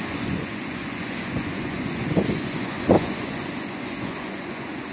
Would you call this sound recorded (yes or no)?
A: no